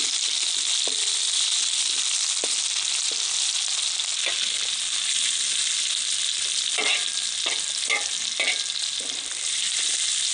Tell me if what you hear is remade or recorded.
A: recorded